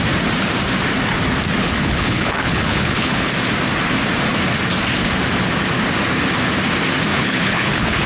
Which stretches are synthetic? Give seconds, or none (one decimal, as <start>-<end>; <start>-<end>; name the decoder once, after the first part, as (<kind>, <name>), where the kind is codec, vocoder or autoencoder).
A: 1.6-3.3 (codec, HILCodec); 7.1-8.1